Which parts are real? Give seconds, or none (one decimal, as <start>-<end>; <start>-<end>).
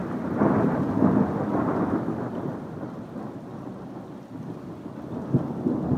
0.0-6.0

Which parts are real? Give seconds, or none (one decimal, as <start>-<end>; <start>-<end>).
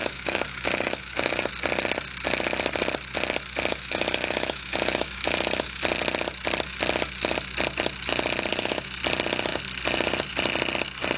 1.5-3.7; 5.8-8.5; 9.0-11.2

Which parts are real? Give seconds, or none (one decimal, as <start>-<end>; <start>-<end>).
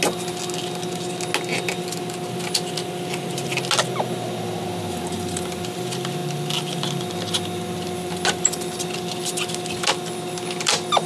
0.0-11.1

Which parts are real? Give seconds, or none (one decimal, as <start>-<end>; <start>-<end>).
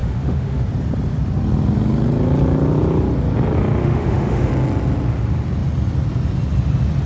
0.7-3.8; 4.5-7.1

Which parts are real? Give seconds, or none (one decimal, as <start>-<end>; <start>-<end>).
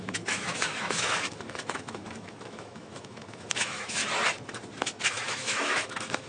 4.0-5.1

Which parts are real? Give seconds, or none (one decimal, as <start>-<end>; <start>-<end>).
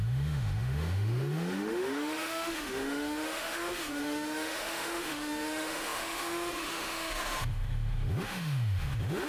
none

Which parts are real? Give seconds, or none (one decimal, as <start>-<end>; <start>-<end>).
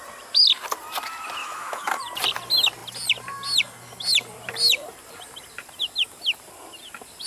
0.0-1.4; 2.0-7.3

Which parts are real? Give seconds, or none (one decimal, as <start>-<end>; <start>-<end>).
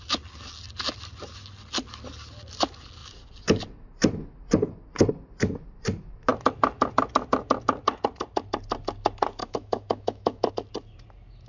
0.0-9.4; 10.5-11.5